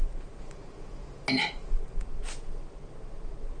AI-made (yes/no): no